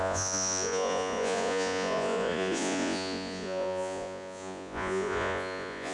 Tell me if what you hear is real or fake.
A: fake